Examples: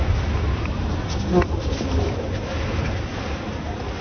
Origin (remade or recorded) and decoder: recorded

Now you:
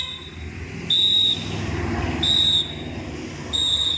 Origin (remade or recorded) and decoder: recorded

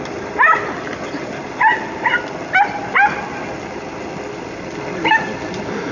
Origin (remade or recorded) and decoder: recorded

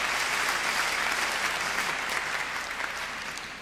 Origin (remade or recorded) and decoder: recorded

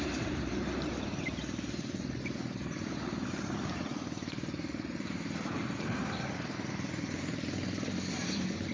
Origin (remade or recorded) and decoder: remade, vocoder, BigVGAN v2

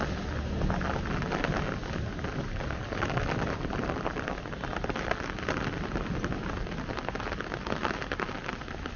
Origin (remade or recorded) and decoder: recorded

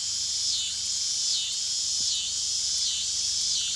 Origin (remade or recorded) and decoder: recorded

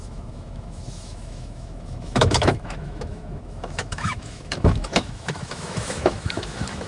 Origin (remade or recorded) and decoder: remade, autoencoder, DAC-VAE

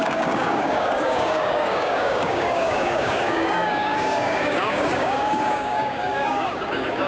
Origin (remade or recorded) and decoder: remade, codec, DAC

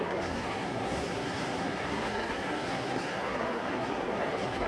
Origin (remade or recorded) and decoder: remade, codec, SNAC